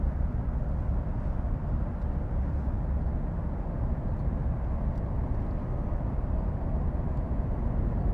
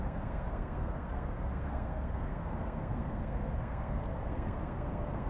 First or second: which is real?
first